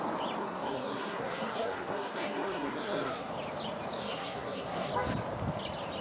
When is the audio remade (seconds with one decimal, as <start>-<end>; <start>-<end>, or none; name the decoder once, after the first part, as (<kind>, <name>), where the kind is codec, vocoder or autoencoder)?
0.4-3.3 (codec, SNAC); 4.0-4.9